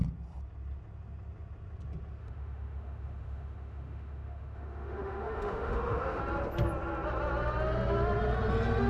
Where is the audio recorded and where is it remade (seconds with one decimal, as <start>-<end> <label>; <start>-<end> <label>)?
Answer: 0.0-2.2 recorded; 2.2-6.2 remade; 6.2-8.9 recorded